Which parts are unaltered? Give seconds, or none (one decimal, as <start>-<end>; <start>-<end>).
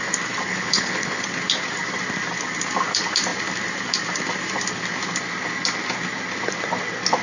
0.0-0.5; 1.2-7.2